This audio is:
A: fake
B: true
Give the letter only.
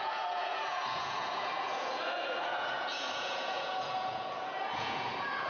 A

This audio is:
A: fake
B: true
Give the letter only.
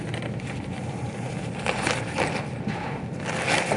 B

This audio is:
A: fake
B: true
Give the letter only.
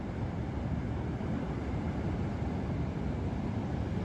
B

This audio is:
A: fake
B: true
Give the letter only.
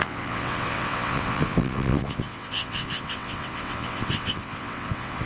A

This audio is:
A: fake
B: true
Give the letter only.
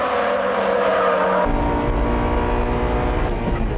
B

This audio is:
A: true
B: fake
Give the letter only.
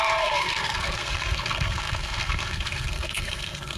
B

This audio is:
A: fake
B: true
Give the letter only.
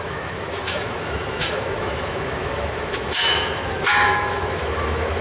A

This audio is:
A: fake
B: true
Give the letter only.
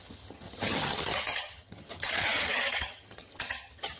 A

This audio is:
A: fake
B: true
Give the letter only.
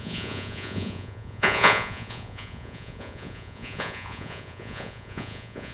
A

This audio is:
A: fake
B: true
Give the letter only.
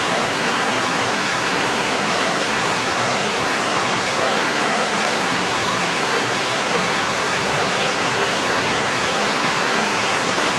A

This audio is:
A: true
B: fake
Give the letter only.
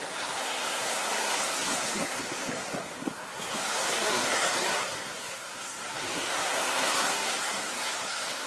B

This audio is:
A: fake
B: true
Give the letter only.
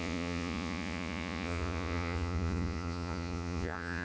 A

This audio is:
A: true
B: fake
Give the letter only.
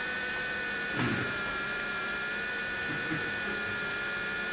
A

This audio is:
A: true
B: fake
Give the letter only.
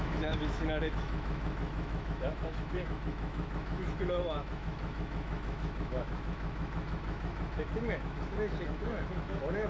B